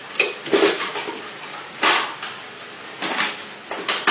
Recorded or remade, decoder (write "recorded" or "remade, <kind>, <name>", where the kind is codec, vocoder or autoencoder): recorded